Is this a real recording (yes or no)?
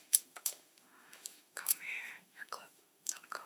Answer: no